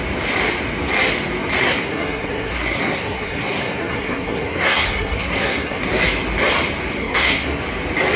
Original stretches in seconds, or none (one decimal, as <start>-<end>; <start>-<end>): 0.0-1.6; 5.8-7.0; 7.6-8.2